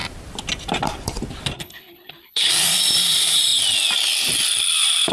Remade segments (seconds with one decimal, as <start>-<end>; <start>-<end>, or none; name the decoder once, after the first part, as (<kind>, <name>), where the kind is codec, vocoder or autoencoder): 1.6-2.5 (codec, HILCodec)